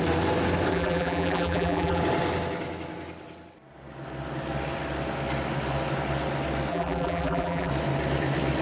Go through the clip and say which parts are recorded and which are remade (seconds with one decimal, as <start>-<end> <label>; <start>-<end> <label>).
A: 0.0-0.7 recorded; 0.7-2.0 remade; 2.0-6.7 recorded; 6.7-7.7 remade; 7.7-8.6 recorded